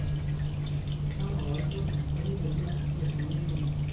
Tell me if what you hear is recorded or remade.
recorded